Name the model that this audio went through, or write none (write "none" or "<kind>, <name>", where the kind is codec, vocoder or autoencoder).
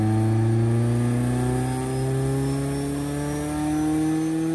none